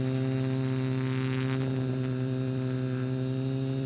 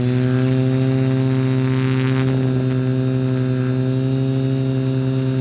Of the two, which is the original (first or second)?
second